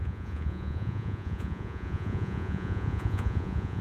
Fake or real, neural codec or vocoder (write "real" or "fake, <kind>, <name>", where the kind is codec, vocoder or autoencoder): fake, vocoder, Vocos